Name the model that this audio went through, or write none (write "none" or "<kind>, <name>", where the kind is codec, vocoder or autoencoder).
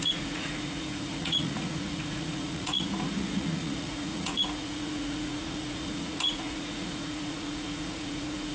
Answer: vocoder, Vocos